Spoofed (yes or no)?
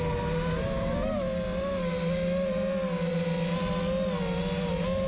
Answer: no